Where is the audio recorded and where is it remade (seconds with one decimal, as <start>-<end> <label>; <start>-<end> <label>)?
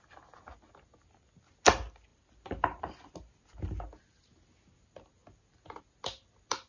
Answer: 0.0-2.1 recorded; 2.1-2.8 remade; 2.8-6.7 recorded